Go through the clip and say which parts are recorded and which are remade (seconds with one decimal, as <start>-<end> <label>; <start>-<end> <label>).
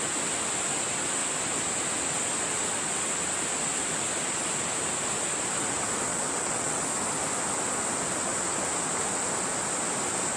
0.0-6.1 recorded; 6.1-6.8 remade; 6.8-10.4 recorded